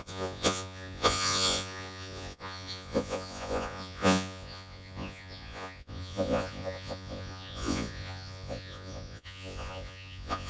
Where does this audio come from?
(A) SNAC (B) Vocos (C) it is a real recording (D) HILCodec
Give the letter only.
B